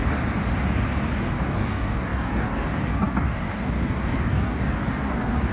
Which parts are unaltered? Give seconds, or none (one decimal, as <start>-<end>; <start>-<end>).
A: 0.0-1.3